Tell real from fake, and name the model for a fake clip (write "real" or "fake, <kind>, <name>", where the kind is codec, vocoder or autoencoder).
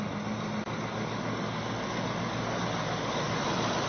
real